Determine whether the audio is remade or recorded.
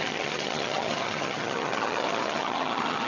remade